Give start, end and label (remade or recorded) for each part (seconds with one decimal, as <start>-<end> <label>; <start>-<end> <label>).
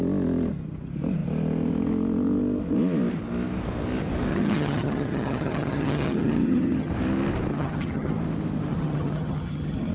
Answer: 0.0-4.3 recorded; 4.3-6.9 remade; 6.9-7.5 recorded; 7.5-8.1 remade; 8.1-8.7 recorded; 8.7-9.9 remade